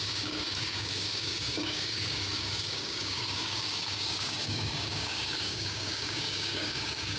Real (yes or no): no